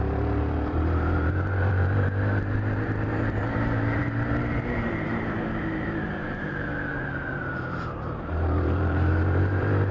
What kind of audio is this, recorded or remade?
remade